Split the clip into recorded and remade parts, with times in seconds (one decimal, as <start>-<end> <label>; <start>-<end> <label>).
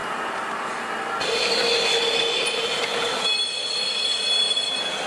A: 0.0-5.1 recorded